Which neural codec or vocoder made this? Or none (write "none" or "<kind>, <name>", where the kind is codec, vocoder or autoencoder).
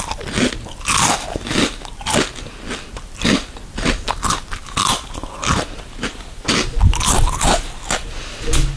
none